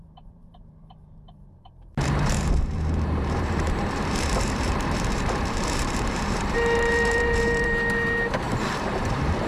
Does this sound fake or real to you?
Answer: fake